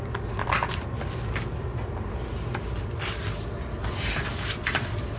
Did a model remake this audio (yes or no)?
no